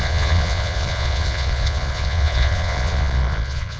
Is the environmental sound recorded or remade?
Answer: remade